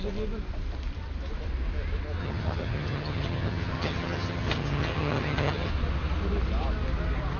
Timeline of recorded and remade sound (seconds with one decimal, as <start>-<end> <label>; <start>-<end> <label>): 0.0-2.2 recorded; 2.2-5.7 remade; 5.7-7.4 recorded